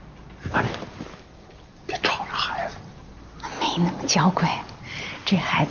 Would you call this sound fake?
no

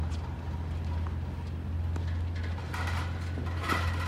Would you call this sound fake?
no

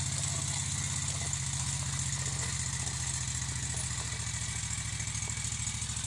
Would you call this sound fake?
no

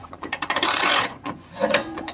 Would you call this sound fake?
yes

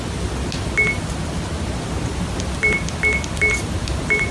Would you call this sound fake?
no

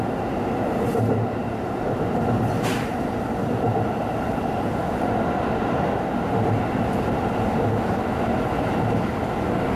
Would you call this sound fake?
no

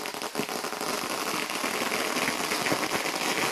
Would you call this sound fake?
no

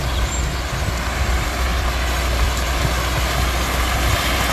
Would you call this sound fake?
no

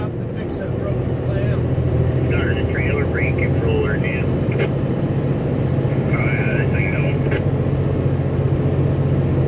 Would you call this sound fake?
no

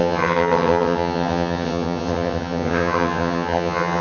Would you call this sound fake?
yes